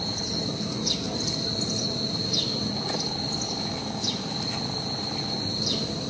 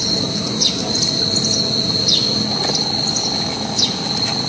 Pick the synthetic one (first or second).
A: first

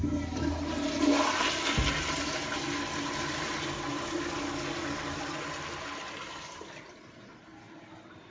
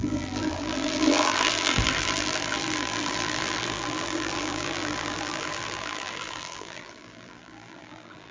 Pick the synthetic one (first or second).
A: second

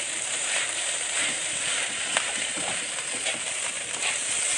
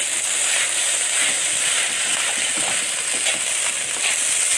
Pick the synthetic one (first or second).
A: first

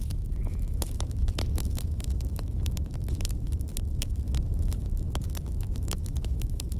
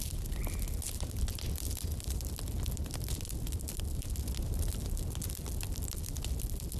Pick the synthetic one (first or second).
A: first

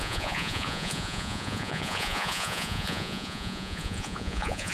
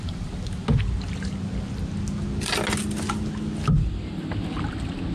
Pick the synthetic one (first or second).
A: first